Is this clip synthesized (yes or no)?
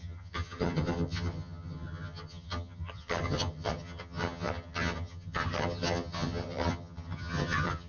yes